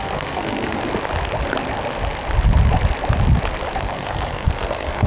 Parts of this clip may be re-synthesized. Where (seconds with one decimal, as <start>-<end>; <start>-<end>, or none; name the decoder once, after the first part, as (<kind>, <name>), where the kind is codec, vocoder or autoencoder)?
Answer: 0.0-0.8 (codec, SNAC); 3.8-5.1